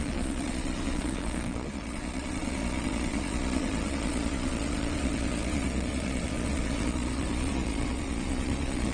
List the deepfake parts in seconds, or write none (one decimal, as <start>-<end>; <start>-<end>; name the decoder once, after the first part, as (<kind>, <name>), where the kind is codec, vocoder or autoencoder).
0.0-8.9 (vocoder, Vocos)